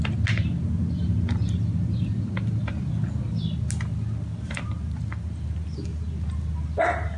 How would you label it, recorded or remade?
recorded